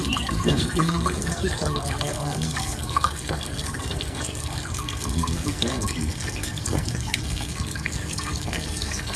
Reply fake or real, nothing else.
fake